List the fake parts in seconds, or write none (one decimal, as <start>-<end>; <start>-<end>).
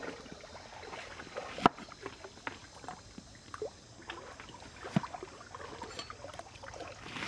none